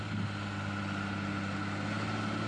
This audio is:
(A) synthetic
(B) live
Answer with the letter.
B